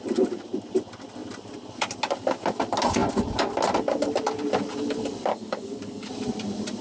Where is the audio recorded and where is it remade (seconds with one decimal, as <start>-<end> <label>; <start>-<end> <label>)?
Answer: 0.0-5.3 recorded; 5.3-6.1 remade; 6.1-6.8 recorded